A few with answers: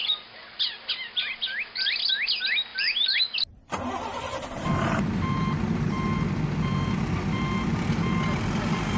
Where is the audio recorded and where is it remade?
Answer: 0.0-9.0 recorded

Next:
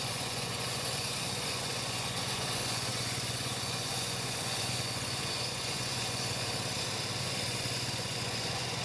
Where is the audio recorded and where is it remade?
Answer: 0.0-6.5 remade; 6.5-7.2 recorded; 7.2-8.8 remade

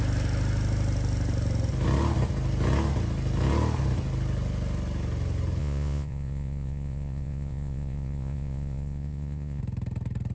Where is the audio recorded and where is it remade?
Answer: 0.0-5.6 recorded; 5.6-9.6 remade; 9.6-10.3 recorded